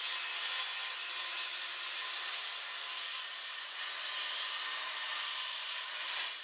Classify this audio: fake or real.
real